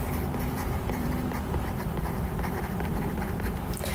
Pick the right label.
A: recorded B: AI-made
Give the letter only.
B